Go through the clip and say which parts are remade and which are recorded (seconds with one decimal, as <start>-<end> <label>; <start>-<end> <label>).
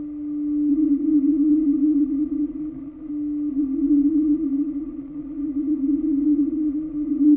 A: 0.0-0.7 recorded; 0.7-3.1 remade; 3.1-3.5 recorded; 3.5-7.4 remade